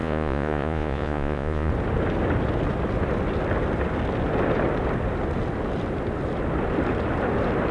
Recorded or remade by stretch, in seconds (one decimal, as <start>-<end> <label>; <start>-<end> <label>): 0.0-1.7 remade; 1.7-7.7 recorded